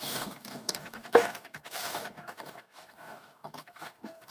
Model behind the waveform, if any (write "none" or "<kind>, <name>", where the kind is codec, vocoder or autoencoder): codec, DAC